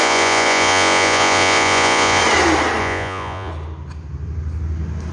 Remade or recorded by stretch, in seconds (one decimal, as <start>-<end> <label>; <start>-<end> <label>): 0.0-2.2 remade; 2.2-2.8 recorded; 2.8-3.5 remade; 3.5-5.1 recorded

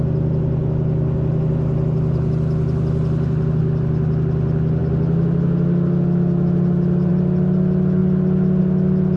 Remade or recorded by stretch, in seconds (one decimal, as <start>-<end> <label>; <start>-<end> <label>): 0.0-9.2 recorded